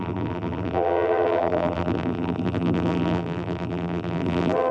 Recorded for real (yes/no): no